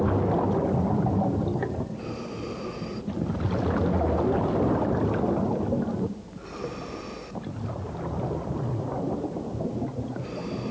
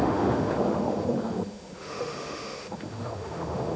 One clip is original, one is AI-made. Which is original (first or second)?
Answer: first